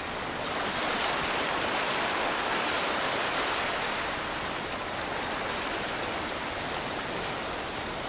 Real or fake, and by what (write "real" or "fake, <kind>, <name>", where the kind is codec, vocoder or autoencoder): real